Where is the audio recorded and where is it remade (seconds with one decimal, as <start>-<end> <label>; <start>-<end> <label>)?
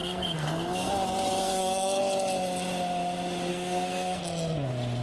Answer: 0.0-0.9 remade; 0.9-1.4 recorded; 1.4-2.0 remade; 2.0-3.5 recorded; 3.5-4.2 remade; 4.2-5.0 recorded